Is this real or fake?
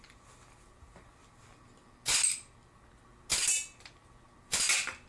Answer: real